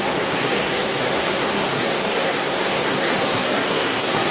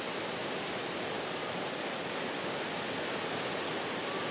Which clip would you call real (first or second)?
second